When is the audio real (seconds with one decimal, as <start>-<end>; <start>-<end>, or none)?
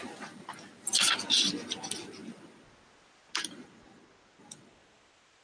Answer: 0.0-5.4